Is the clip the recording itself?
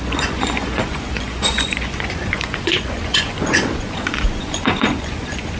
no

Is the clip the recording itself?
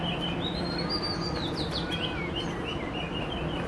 yes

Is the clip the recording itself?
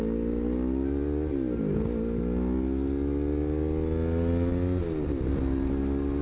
yes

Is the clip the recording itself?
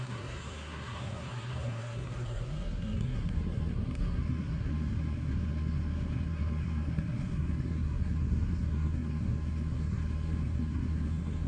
no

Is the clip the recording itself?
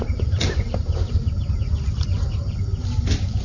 yes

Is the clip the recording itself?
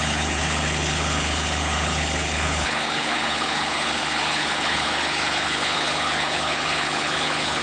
no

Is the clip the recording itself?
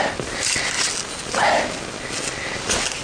yes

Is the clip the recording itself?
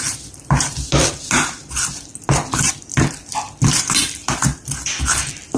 yes